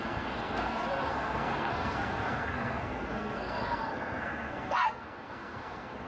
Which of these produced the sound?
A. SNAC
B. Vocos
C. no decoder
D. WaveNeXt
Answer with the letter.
A